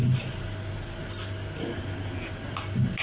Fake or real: real